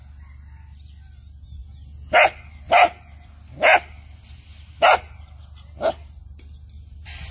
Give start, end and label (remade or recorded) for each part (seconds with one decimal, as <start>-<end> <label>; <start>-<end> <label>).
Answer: 0.0-7.3 recorded